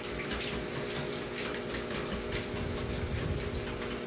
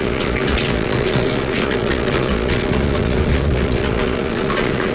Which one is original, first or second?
first